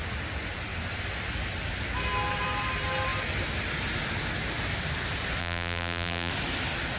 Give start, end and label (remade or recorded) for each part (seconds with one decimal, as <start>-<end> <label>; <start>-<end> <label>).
0.0-5.4 recorded; 5.4-6.3 remade; 6.3-7.0 recorded